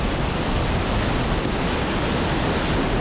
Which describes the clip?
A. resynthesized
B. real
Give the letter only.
B